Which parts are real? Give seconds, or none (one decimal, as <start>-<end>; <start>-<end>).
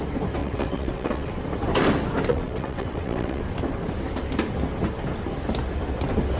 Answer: 0.0-0.4; 1.3-2.3; 3.4-6.4